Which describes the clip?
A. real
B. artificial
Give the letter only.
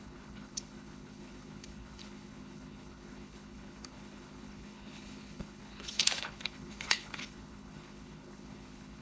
B